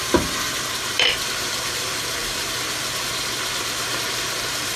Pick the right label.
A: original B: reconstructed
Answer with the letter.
B